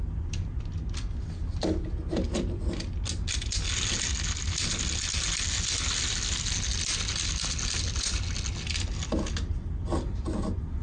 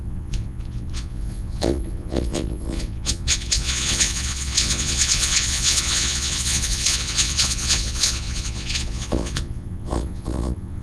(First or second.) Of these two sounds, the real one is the first